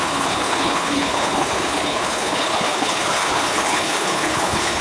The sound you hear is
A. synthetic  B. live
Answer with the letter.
A